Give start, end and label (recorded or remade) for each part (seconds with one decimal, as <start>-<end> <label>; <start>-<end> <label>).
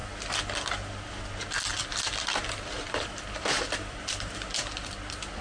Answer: 0.0-1.7 recorded; 1.7-4.9 remade; 4.9-5.4 recorded